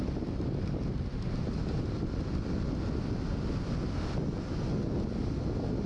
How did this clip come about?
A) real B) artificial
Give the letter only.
A